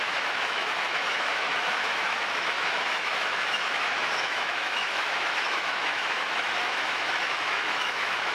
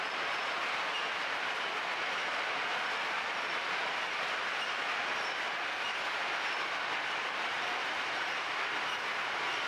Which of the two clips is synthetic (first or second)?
first